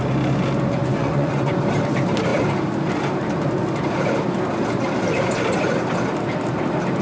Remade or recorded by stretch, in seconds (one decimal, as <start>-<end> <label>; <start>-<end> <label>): 0.0-0.8 recorded; 0.8-1.6 remade; 1.6-7.0 recorded